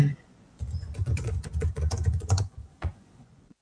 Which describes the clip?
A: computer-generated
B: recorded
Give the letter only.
A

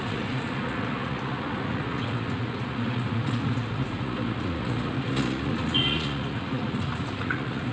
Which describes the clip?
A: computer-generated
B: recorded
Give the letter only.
A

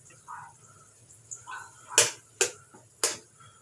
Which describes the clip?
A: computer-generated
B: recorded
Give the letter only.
B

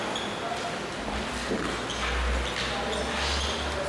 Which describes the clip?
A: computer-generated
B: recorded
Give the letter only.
B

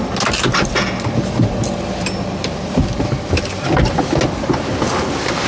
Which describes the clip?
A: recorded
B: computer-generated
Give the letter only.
A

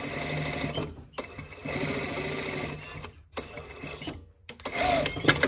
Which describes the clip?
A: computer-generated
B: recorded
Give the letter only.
B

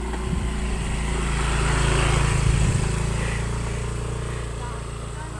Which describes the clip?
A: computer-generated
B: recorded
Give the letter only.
B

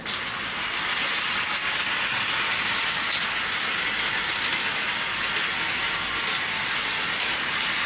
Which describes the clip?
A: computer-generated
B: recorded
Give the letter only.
B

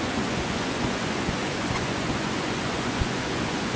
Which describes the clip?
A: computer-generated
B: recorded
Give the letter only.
A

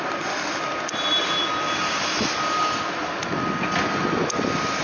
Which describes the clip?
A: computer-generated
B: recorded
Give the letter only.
B